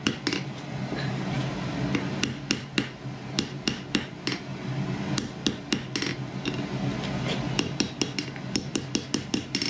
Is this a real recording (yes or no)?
yes